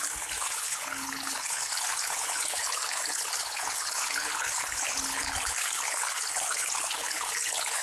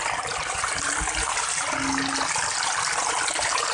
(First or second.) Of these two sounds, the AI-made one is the first